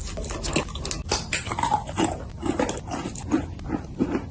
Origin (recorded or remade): recorded